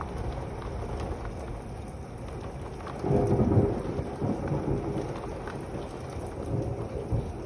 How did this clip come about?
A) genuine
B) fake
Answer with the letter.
A